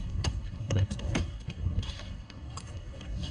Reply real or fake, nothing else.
fake